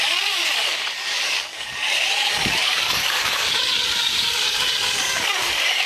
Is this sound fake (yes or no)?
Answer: yes